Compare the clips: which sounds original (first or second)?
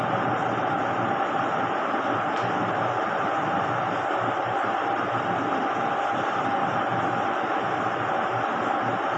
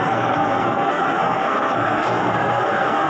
first